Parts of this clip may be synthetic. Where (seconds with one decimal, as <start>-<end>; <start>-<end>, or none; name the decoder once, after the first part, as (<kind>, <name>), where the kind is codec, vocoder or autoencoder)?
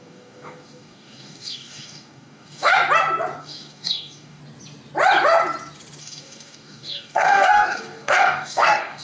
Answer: 0.0-2.7 (codec, DAC); 3.4-4.4; 6.0-9.0